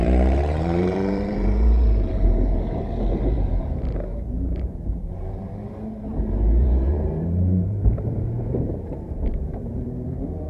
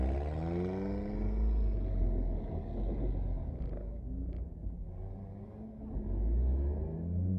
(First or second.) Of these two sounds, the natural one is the second